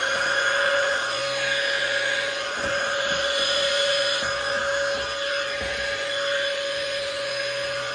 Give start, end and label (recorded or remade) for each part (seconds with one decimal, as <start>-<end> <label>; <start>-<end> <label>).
0.0-1.2 remade; 1.2-1.8 recorded; 1.8-4.6 remade; 4.6-5.3 recorded; 5.3-7.9 remade